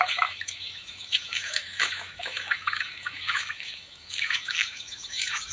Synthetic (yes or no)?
yes